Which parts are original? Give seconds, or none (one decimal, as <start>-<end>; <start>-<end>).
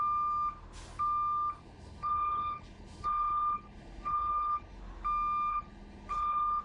0.0-1.6; 4.8-5.5